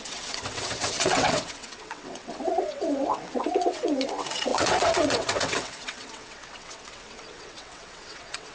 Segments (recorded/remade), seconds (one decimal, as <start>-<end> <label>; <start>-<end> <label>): 0.0-8.5 remade